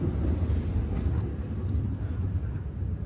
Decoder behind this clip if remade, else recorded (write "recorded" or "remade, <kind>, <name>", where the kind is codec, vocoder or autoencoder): recorded